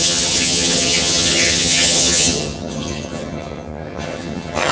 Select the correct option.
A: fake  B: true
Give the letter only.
A